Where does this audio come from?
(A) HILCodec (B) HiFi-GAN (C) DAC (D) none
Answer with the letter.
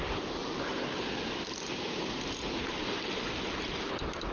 D